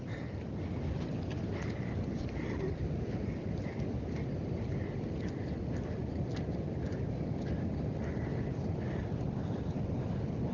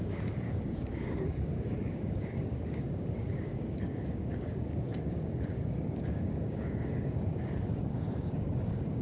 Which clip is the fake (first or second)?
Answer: second